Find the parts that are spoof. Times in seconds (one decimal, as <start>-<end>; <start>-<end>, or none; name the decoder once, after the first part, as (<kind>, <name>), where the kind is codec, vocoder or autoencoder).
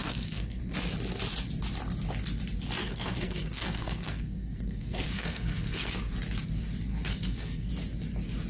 0.0-0.6 (codec, SNAC); 2.8-5.9; 6.9-7.7